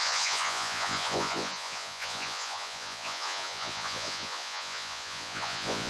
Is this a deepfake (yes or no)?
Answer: yes